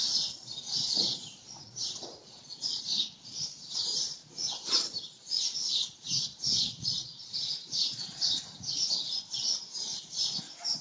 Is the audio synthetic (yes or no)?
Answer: yes